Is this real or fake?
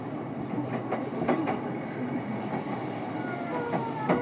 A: real